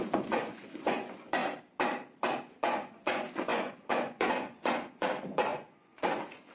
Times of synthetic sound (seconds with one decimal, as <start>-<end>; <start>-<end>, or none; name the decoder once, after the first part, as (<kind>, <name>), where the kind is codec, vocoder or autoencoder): 0.0-1.4 (vocoder, Vocos); 2.4-6.5